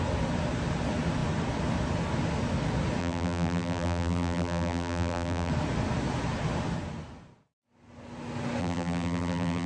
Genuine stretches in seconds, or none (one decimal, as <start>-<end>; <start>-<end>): 0.0-3.0; 5.5-8.6